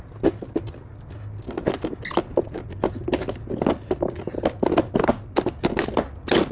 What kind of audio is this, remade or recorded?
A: recorded